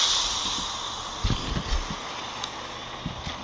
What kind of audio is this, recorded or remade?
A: recorded